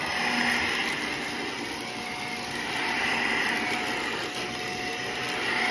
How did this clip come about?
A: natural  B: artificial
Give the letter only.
A